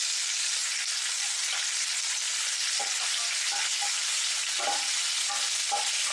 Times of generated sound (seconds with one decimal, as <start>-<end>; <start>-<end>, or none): none